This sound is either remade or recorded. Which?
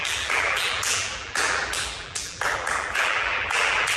remade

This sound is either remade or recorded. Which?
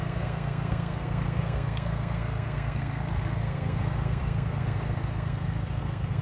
remade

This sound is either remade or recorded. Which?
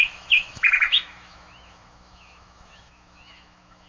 remade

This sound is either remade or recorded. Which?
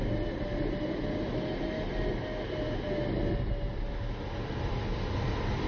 recorded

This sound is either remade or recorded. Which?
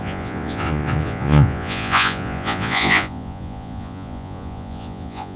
remade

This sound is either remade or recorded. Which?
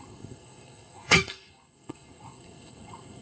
remade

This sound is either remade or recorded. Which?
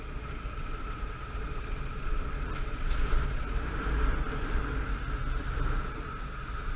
recorded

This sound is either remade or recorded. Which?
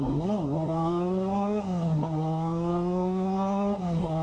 remade